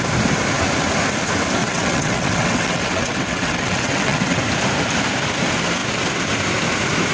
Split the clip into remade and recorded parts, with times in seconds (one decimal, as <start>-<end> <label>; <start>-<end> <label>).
0.0-1.6 recorded; 1.6-4.4 remade; 4.4-7.1 recorded